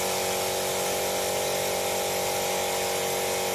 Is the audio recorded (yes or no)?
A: yes